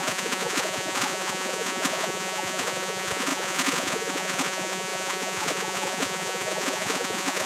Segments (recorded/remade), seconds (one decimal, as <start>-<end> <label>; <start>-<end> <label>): 0.0-7.5 remade